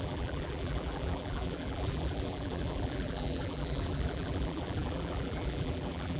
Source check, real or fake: fake